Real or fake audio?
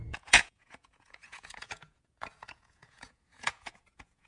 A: fake